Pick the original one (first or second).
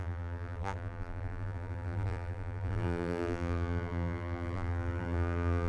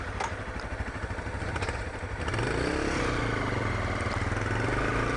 second